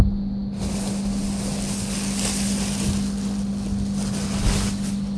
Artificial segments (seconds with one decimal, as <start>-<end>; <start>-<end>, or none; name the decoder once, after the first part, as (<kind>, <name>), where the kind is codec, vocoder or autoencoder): none